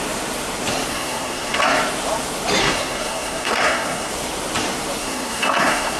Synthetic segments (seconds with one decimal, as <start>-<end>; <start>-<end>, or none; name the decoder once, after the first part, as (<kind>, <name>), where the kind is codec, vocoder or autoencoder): 0.9-1.6 (codec, SNAC); 2.6-4.1; 5.0-6.0